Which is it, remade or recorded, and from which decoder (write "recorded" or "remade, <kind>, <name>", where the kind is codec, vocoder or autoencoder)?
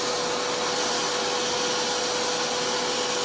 recorded